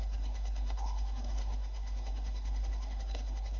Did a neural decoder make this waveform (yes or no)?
yes